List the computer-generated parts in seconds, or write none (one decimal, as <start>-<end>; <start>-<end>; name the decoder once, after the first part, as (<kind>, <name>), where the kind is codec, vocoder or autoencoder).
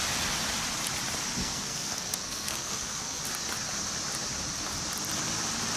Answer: 1.4-3.2 (codec, SNAC)